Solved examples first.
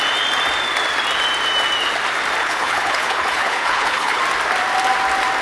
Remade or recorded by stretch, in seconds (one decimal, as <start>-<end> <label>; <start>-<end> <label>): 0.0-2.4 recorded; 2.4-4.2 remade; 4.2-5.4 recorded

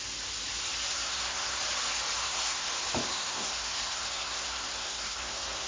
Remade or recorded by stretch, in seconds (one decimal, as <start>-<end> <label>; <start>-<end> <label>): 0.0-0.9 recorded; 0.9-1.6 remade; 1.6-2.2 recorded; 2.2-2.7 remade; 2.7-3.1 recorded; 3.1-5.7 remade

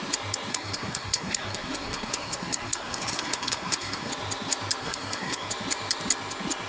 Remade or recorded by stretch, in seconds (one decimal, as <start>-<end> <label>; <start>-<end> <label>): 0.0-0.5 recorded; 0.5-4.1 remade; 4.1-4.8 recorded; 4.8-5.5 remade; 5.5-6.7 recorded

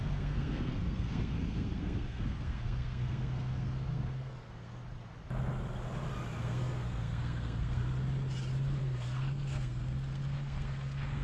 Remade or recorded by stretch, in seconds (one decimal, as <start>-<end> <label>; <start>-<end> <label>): 0.0-4.8 remade; 4.8-6.4 recorded; 6.4-7.8 remade; 7.8-8.8 recorded; 8.8-11.2 remade

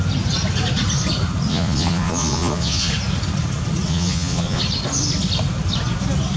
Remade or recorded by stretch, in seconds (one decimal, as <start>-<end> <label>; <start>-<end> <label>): 0.0-1.5 recorded; 1.5-2.9 remade; 2.9-3.9 recorded; 3.9-4.6 remade; 4.6-6.4 recorded

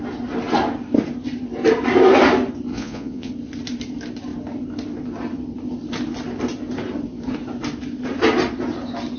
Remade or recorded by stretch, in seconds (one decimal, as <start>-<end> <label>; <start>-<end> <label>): 0.0-2.7 recorded; 2.7-3.3 remade; 3.3-9.2 recorded

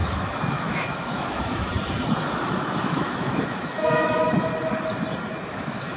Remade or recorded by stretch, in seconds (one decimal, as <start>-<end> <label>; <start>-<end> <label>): 0.0-1.7 remade; 1.7-2.3 recorded; 2.3-4.5 remade; 4.5-5.5 recorded; 5.5-6.0 remade